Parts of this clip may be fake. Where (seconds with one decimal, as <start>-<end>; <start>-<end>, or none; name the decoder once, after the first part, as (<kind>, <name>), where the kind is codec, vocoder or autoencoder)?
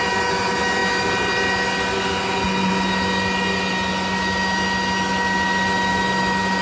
none